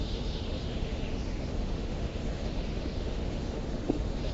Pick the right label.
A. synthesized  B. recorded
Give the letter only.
A